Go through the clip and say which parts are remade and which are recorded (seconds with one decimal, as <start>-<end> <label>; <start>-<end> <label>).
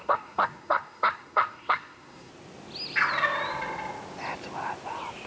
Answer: 0.0-2.3 remade; 2.3-5.3 recorded